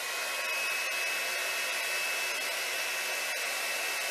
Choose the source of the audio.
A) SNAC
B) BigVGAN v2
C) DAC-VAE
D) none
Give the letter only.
D